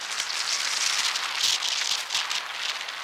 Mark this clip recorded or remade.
recorded